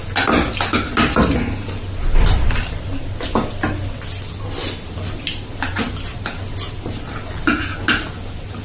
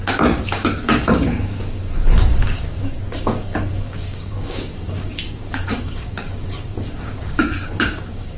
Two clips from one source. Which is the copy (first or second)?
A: second